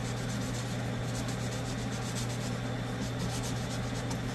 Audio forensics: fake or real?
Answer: real